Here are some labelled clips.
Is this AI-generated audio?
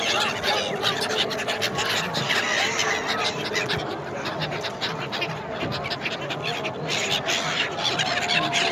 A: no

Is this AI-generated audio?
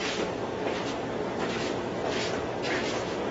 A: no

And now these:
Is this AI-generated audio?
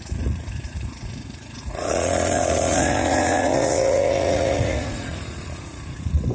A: yes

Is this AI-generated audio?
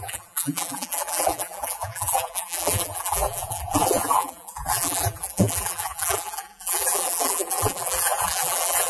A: yes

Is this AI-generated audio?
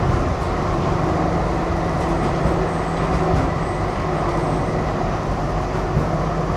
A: no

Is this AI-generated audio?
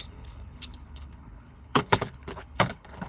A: yes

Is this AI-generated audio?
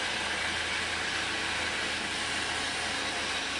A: no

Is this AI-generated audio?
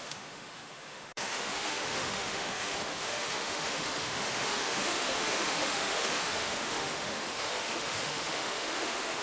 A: yes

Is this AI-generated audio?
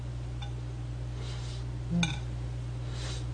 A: no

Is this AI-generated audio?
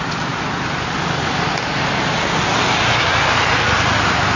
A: no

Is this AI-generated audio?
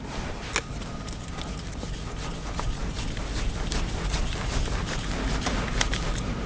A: no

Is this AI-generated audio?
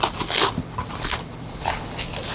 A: no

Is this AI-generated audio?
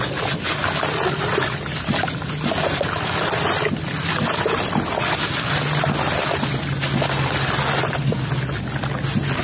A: no